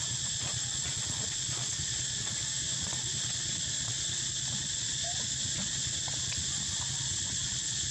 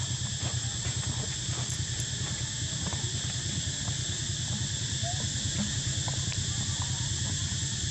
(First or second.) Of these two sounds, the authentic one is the second